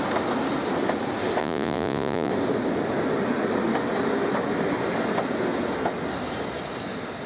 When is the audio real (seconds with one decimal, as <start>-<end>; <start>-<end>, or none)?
0.0-1.4; 2.3-7.3